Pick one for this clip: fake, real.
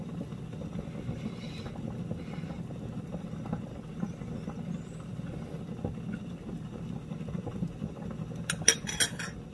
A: real